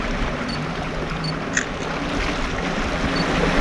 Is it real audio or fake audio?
real